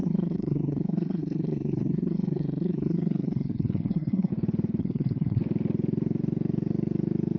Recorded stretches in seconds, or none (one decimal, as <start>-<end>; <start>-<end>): 4.3-4.8; 5.4-7.4